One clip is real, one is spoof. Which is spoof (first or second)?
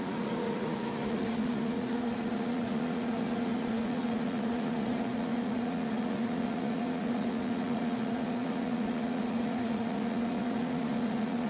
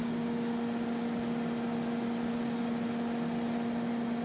first